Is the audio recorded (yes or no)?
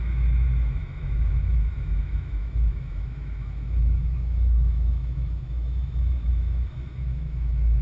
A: no